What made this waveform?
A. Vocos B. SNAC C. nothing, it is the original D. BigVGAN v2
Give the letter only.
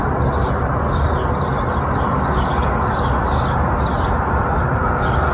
C